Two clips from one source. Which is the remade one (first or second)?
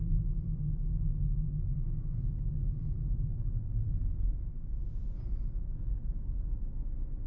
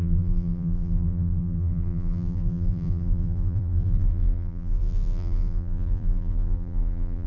second